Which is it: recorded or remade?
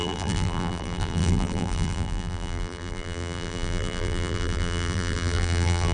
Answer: remade